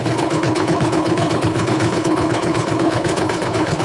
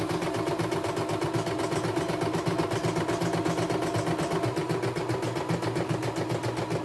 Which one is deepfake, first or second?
first